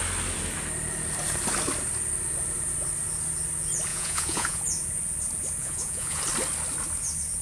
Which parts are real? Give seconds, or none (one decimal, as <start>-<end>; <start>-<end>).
0.0-3.9; 4.6-5.6; 6.2-7.4